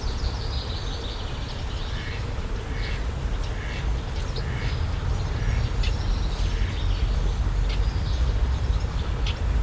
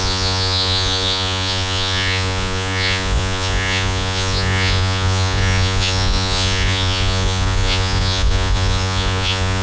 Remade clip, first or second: second